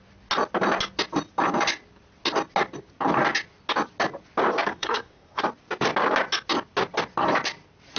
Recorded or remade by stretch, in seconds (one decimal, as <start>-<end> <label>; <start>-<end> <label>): 0.0-4.7 recorded; 4.7-5.4 remade; 5.4-8.0 recorded